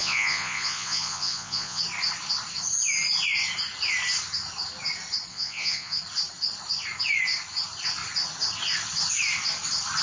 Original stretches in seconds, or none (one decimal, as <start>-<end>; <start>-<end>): 1.8-5.3; 6.0-10.0

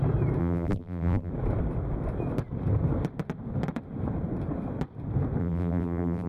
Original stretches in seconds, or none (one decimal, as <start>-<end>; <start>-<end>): 0.0-0.4; 1.3-5.4

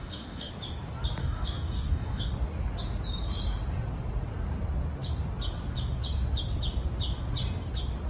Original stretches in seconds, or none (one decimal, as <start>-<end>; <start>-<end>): 0.5-1.2; 2.3-8.1

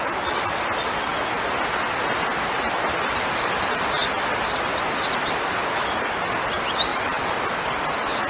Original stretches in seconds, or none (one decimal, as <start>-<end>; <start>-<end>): 0.0-8.3

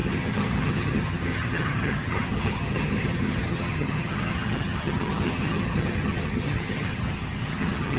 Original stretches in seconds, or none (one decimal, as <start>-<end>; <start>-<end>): none

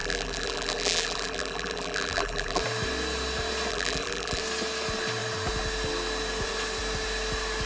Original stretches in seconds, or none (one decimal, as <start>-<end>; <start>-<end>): 2.6-3.7; 4.4-7.7

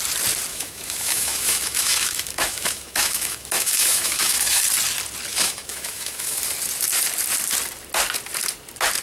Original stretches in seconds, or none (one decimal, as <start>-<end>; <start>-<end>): 0.0-0.5; 4.6-5.3; 6.4-9.0

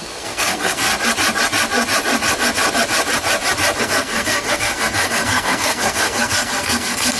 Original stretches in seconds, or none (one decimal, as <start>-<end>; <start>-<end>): 0.9-3.8